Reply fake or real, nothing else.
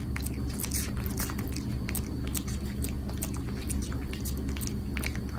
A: real